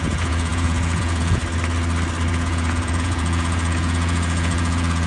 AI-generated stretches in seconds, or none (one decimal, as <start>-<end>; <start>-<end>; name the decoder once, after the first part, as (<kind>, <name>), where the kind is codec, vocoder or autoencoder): 0.0-1.4 (vocoder, Vocos); 2.3-5.1